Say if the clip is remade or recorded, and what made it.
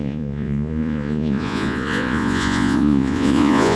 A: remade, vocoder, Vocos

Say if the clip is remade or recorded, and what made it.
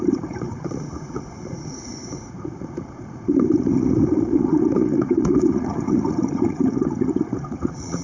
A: remade, vocoder, Vocos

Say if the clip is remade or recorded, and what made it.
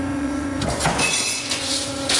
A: remade, vocoder, Vocos